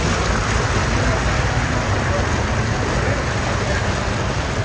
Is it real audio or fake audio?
real